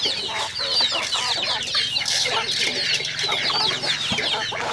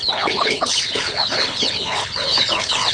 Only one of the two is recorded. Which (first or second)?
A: first